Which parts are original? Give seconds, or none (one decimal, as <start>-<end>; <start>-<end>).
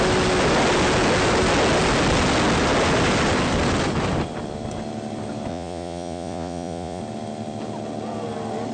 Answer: 0.0-5.5; 7.0-8.7